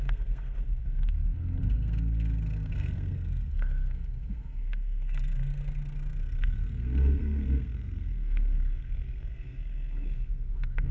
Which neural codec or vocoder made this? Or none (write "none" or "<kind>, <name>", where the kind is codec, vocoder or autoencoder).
codec, SNAC